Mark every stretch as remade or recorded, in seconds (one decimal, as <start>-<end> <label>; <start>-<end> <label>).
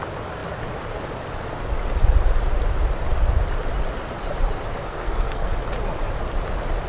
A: 0.0-4.8 recorded; 4.8-5.5 remade; 5.5-6.9 recorded